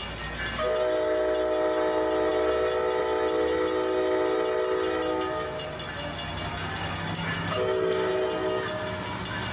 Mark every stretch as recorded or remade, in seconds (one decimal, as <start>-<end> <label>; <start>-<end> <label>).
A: 0.0-6.5 recorded; 6.5-8.1 remade; 8.1-9.5 recorded